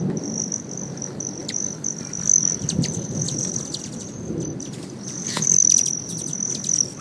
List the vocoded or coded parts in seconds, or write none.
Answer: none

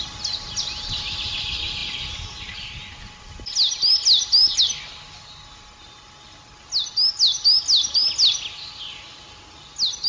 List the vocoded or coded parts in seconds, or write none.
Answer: none

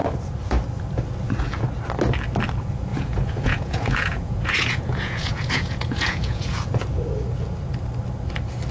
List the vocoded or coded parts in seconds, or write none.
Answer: 2.9-6.8 (vocoder, Vocos)

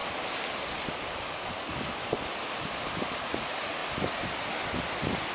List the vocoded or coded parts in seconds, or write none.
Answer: 3.2-3.8 (vocoder, Vocos)